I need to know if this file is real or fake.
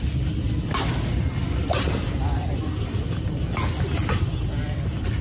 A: real